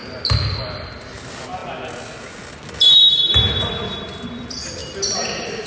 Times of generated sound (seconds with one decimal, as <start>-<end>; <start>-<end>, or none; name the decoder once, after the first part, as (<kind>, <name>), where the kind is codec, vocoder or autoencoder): 4.8-5.7 (vocoder, BigVGAN v2)